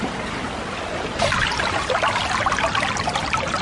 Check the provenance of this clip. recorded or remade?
recorded